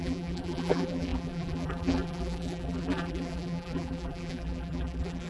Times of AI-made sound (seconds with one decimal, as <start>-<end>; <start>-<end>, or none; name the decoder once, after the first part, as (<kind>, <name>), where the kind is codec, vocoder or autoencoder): 0.0-5.3 (vocoder, BigVGAN v2)